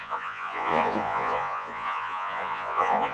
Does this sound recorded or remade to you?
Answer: remade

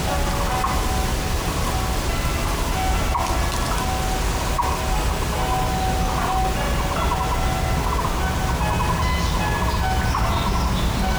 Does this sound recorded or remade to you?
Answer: recorded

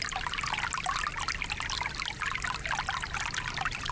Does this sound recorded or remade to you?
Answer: recorded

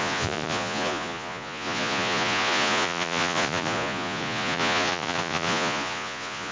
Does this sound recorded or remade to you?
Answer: remade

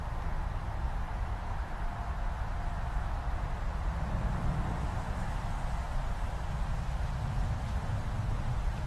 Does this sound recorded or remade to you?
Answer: recorded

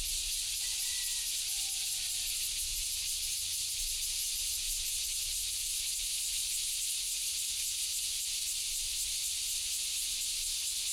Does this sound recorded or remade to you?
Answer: remade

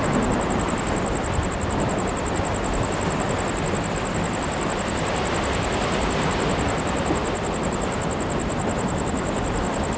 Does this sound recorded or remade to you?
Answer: recorded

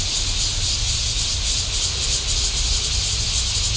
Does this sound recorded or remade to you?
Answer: recorded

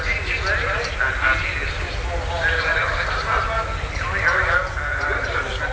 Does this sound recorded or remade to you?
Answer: recorded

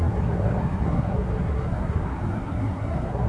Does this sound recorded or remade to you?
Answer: remade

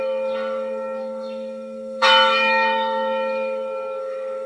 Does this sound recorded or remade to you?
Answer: remade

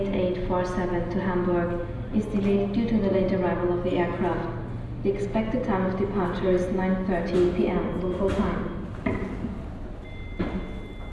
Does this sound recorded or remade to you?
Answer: recorded